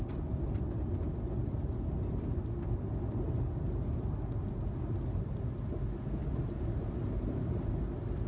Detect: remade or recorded recorded